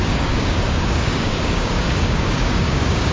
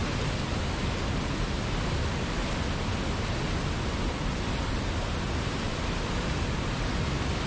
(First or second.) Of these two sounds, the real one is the second